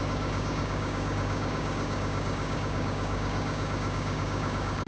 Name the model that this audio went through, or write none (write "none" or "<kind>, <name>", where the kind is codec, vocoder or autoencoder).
codec, DAC